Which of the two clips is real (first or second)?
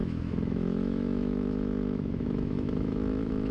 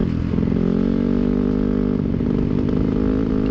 second